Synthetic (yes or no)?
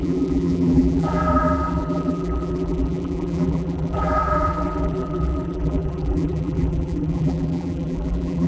yes